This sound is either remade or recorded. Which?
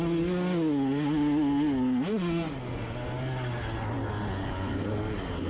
recorded